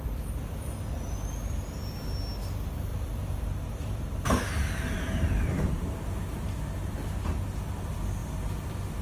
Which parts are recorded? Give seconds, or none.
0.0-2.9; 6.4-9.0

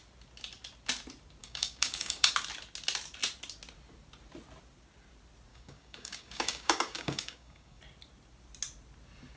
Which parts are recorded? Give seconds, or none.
0.0-1.4; 2.3-5.5; 7.8-9.4